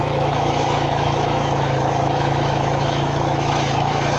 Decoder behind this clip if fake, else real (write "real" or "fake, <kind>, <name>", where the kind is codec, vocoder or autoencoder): fake, autoencoder, DAC-VAE